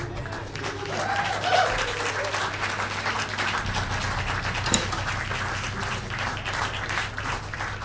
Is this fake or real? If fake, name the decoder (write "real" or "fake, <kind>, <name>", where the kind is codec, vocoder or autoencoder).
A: real